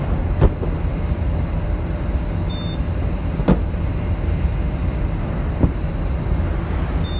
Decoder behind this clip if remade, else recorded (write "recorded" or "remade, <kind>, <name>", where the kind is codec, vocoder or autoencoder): recorded